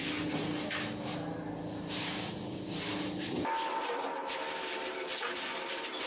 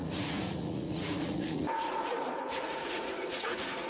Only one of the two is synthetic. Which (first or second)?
second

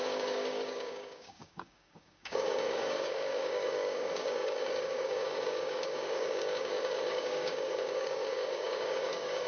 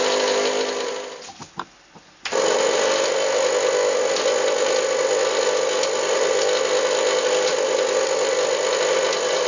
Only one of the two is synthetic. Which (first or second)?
first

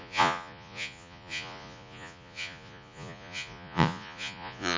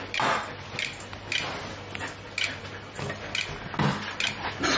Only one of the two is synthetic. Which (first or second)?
first